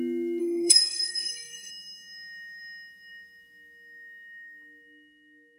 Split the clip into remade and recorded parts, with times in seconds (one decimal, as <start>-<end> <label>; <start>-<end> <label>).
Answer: 0.0-0.4 recorded; 0.4-1.7 remade; 1.7-5.6 recorded